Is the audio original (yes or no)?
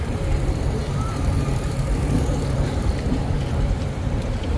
no